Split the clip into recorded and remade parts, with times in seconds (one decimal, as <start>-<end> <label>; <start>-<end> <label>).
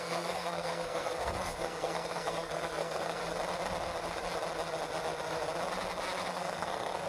0.0-3.2 remade; 3.2-6.3 recorded; 6.3-7.1 remade